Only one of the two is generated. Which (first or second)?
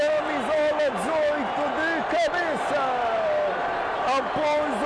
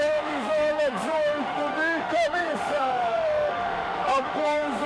second